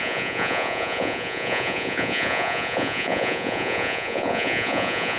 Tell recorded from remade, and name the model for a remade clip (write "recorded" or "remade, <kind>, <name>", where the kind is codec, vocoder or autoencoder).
remade, vocoder, Vocos